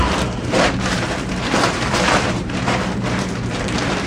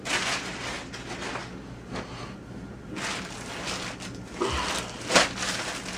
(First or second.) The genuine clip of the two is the second